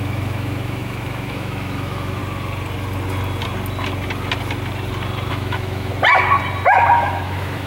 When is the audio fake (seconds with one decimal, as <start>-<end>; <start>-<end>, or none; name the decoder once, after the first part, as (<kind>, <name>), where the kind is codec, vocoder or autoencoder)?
0.0-2.2 (autoencoder, DAC-VAE); 5.3-5.9; 6.9-7.7